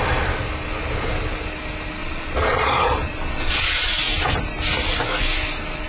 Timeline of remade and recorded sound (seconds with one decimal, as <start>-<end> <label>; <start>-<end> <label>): 0.0-2.0 recorded; 2.0-3.9 remade; 3.9-5.9 recorded